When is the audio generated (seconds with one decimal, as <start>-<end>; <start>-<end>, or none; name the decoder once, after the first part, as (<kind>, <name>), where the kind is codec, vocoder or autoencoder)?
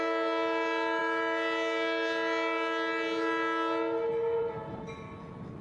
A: none